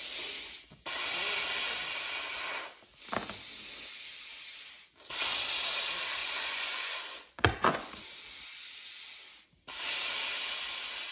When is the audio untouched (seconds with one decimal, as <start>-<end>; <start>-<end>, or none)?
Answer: 0.0-6.2; 8.0-11.1